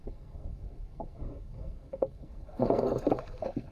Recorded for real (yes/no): no